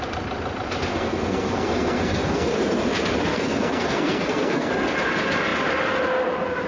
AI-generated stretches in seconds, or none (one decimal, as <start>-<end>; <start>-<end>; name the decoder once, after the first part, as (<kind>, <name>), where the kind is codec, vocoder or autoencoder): 0.9-2.5 (codec, SNAC); 3.3-4.7